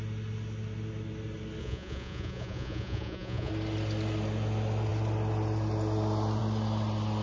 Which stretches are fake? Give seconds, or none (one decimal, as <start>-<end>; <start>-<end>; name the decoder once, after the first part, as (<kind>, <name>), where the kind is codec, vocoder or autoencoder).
1.6-3.5 (vocoder, Vocos)